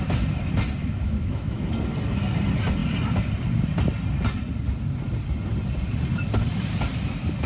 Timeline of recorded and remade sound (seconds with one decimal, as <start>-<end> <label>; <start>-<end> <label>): 0.0-0.8 recorded; 0.8-1.7 remade; 1.7-7.5 recorded